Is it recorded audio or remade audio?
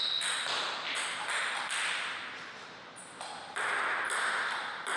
recorded